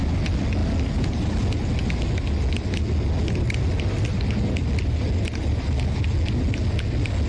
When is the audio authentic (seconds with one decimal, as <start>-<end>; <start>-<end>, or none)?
0.0-7.3